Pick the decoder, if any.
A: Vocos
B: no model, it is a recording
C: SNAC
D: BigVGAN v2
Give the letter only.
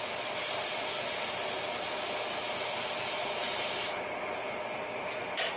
B